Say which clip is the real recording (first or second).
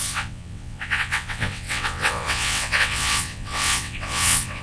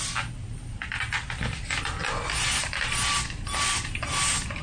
second